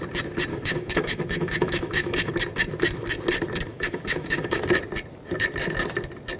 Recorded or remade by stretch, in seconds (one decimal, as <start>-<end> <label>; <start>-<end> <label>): 0.0-0.5 recorded; 0.5-2.3 remade; 2.3-3.7 recorded; 3.7-4.6 remade; 4.6-6.4 recorded

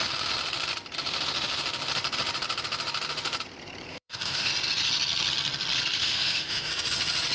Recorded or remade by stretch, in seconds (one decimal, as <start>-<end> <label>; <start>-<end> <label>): 0.0-3.9 recorded; 3.9-4.5 remade; 4.5-6.0 recorded; 6.0-6.7 remade; 6.7-7.3 recorded